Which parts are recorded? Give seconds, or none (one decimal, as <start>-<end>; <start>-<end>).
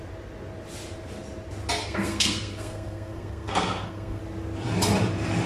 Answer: 0.0-1.8; 4.2-5.5